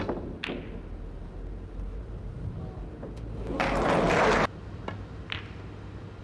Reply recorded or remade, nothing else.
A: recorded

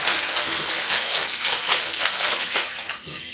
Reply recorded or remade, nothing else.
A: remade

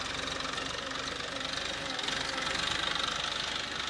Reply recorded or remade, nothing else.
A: recorded